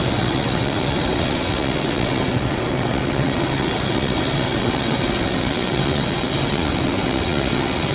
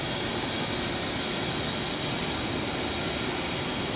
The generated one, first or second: first